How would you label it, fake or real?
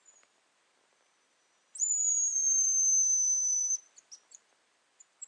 fake